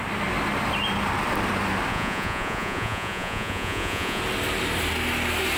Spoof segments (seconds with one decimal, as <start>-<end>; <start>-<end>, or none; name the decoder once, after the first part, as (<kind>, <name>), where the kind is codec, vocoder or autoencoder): 1.9-4.2 (vocoder, Vocos)